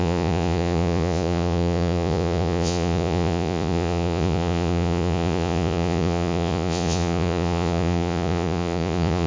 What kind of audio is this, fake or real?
fake